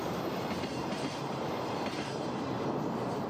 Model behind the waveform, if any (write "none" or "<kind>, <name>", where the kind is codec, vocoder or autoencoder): vocoder, BigVGAN v2